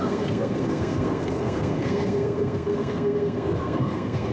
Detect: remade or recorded remade